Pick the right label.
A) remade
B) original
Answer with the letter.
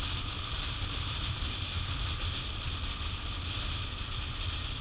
B